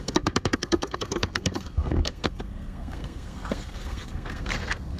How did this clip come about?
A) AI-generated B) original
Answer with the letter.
A